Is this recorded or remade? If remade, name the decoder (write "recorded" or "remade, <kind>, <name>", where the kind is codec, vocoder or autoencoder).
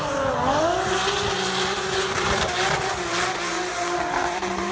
recorded